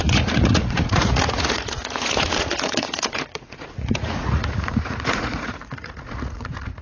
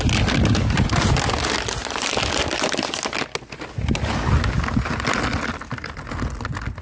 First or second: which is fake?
first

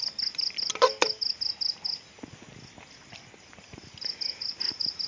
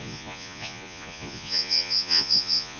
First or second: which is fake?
second